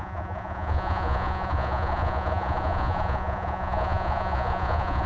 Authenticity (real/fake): fake